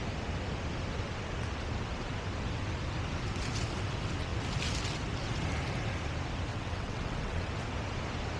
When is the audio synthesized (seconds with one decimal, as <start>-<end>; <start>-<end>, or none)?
6.5-7.5